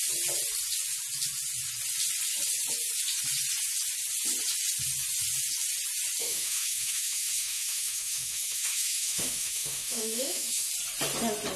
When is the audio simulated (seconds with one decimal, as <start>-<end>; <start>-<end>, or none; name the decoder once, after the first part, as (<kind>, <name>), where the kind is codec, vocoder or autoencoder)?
6.2-10.7 (autoencoder, DAC-VAE)